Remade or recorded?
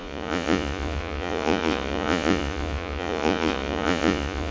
remade